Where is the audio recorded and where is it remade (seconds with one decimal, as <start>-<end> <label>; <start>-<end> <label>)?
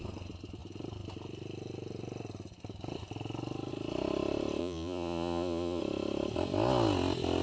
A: 0.0-4.6 recorded; 4.6-5.8 remade; 5.8-7.4 recorded